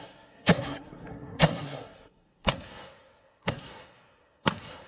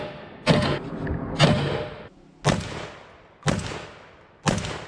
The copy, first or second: first